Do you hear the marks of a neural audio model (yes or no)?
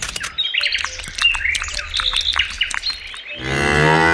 no